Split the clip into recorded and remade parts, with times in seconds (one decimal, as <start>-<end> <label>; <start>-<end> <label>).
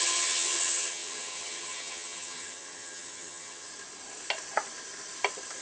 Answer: 0.0-3.7 remade; 3.7-5.6 recorded